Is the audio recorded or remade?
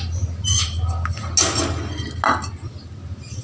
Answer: recorded